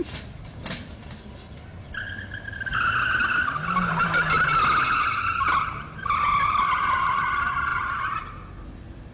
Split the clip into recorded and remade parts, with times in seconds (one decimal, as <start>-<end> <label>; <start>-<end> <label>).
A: 0.0-9.1 recorded